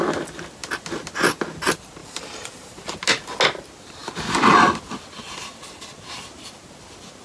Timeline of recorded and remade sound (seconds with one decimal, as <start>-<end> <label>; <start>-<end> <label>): 0.0-2.0 recorded; 2.0-2.9 remade; 2.9-7.2 recorded